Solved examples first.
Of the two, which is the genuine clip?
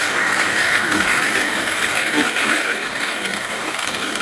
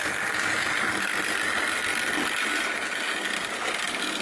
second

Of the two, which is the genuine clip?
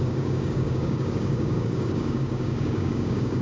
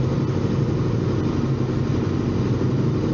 second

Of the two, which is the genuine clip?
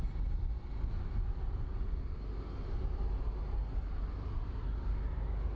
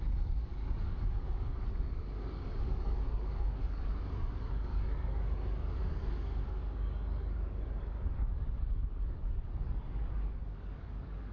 first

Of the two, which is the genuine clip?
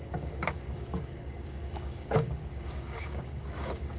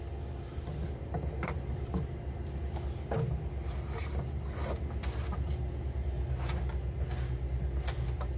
second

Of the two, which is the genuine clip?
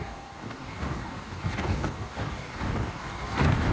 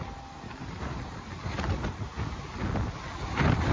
second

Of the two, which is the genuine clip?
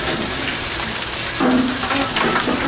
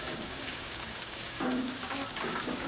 first